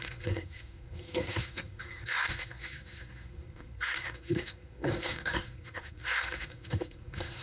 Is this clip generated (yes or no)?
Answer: yes